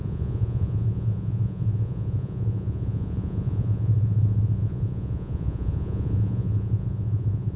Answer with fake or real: fake